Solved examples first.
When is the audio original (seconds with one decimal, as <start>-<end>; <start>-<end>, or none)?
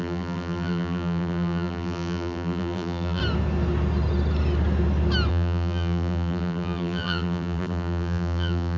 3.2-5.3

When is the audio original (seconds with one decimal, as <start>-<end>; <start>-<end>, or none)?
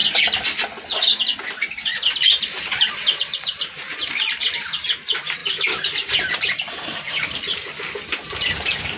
0.0-2.2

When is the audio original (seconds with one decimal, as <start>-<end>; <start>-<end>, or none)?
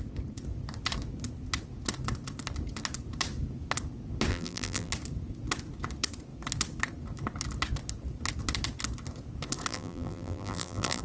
0.0-4.3; 4.9-9.7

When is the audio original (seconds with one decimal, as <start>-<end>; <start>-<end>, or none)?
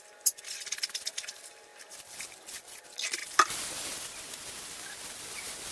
0.0-5.7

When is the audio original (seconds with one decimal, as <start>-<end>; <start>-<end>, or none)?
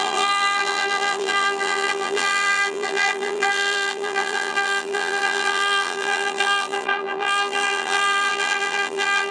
none